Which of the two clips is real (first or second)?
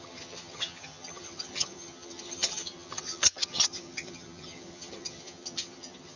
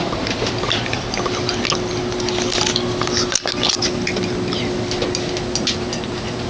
second